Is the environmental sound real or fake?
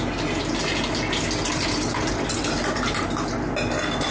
real